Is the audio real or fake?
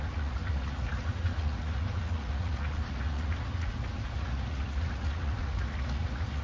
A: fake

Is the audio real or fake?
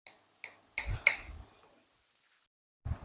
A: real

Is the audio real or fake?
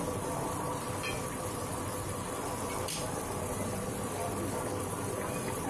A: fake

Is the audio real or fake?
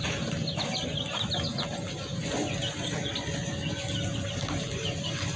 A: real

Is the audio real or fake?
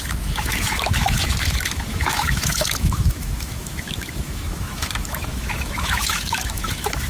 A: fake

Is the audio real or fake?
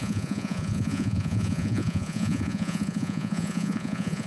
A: fake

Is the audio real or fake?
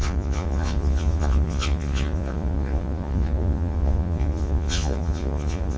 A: fake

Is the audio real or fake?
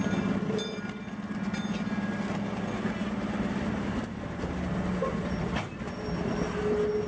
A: real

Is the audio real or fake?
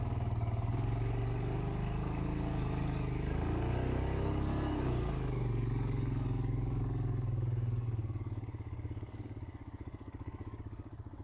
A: fake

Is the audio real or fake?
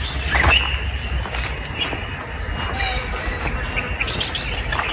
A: real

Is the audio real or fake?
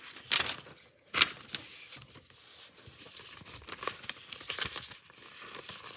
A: real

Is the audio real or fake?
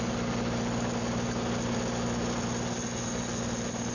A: real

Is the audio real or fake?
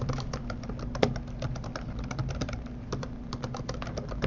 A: fake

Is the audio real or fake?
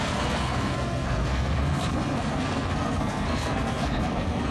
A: fake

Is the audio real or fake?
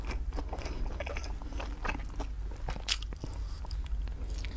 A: real